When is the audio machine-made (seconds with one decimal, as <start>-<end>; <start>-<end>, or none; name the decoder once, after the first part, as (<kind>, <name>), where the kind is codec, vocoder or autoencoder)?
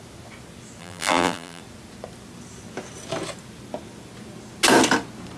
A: 0.8-1.6 (vocoder, BigVGAN v2)